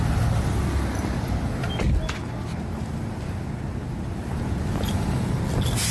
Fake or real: real